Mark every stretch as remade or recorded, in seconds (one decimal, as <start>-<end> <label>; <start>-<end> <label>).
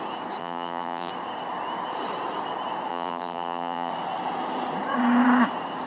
0.0-0.4 recorded; 0.4-1.1 remade; 1.1-2.9 recorded; 2.9-3.9 remade; 3.9-5.9 recorded